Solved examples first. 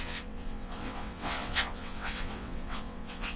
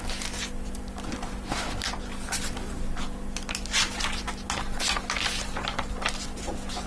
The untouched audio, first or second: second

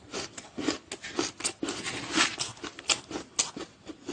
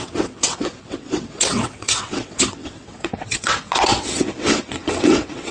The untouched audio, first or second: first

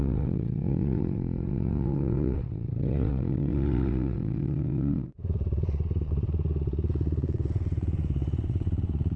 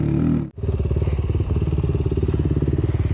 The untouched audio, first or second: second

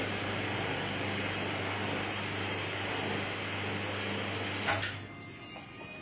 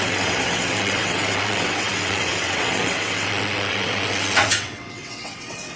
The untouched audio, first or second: first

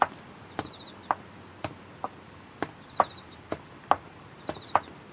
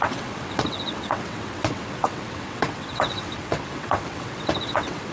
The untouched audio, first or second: first